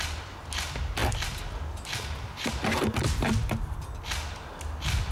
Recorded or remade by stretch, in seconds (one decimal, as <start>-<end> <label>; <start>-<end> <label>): 0.0-5.1 recorded